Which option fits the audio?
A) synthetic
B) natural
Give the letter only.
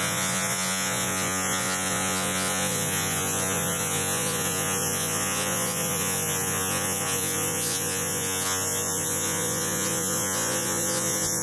A